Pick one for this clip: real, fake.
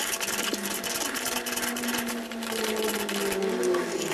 fake